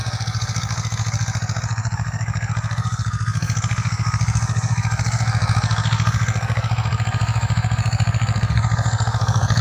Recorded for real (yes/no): no